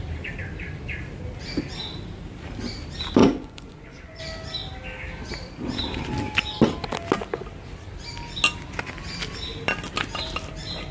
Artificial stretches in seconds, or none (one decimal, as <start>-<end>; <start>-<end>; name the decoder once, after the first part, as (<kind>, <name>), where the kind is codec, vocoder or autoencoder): 3.2-4.2 (vocoder, Vocos)